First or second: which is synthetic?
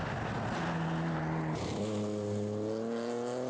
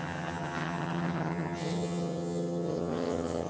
second